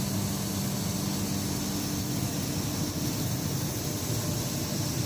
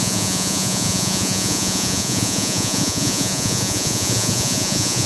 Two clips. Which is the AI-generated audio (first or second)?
second